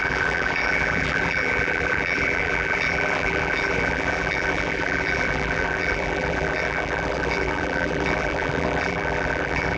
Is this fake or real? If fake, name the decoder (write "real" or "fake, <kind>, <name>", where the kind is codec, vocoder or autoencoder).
fake, vocoder, BigVGAN v2